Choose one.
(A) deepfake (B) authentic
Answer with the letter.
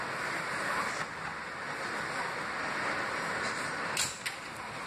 B